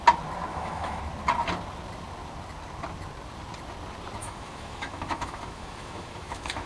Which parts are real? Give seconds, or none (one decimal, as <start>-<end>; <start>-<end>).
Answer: 0.0-0.5; 1.0-4.2